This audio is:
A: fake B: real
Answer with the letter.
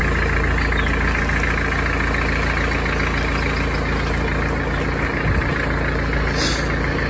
B